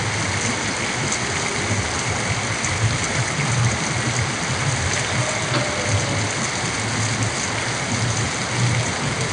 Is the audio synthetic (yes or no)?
no